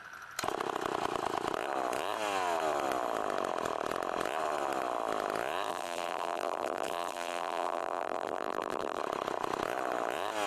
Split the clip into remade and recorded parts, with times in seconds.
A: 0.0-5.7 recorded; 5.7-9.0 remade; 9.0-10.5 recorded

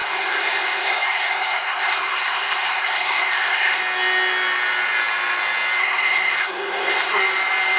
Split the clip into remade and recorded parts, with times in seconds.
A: 0.0-3.8 remade; 3.8-5.8 recorded; 5.8-7.2 remade; 7.2-7.8 recorded

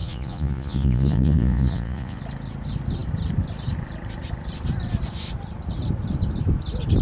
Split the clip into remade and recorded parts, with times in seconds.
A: 0.0-2.2 remade; 2.2-7.0 recorded

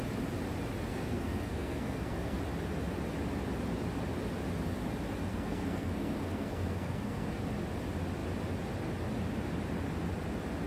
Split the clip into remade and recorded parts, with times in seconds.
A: 0.0-0.9 recorded; 0.9-2.4 remade; 2.4-5.3 recorded; 5.3-7.4 remade; 7.4-10.7 recorded

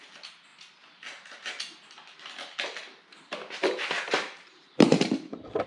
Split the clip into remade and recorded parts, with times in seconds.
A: 0.0-0.5 remade; 0.5-3.9 recorded; 3.9-5.7 remade

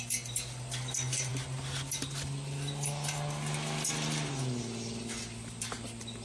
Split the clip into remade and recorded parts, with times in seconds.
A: 0.0-6.2 recorded

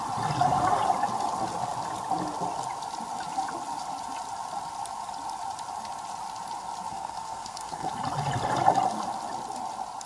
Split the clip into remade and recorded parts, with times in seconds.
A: 0.0-6.9 recorded; 6.9-7.9 remade; 7.9-10.1 recorded